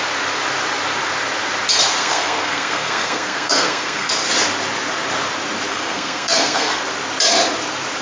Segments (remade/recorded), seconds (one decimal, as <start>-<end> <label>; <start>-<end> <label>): 0.0-2.0 recorded; 2.0-4.1 remade; 4.1-5.7 recorded; 5.7-6.8 remade; 6.8-8.0 recorded